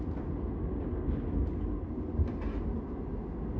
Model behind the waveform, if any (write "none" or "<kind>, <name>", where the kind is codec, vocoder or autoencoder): none